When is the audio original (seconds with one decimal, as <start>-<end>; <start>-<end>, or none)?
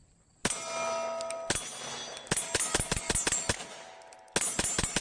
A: 0.0-5.0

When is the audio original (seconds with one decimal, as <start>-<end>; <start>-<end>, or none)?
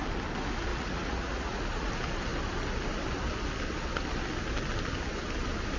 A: 0.0-0.7; 1.9-5.8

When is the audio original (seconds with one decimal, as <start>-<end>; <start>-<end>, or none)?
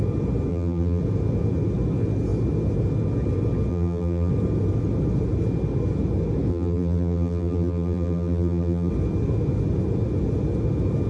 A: 0.0-0.5; 1.0-3.7; 4.3-6.5; 8.9-11.1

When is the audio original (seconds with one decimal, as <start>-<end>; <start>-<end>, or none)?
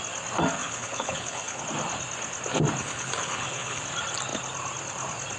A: 0.0-0.6; 1.6-2.8; 3.8-5.4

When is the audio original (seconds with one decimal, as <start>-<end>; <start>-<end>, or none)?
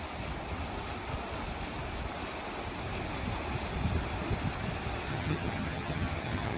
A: 0.0-5.1